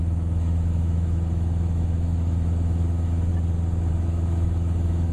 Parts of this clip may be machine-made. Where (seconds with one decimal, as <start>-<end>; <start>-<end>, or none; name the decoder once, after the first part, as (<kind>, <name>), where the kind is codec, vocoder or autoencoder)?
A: 0.0-3.3 (autoencoder, DAC-VAE); 3.9-5.1